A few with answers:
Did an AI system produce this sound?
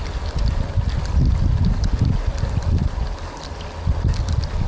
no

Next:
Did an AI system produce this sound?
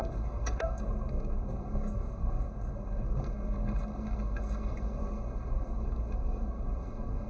yes